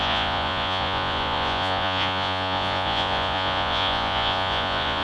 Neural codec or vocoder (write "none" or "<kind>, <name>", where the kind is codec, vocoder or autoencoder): vocoder, Vocos